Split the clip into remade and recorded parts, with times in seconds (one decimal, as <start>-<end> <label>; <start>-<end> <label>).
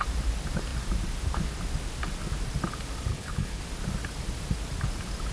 0.0-3.1 recorded; 3.1-3.6 remade; 3.6-5.3 recorded